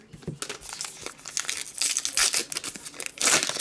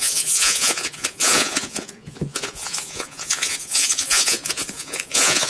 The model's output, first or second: second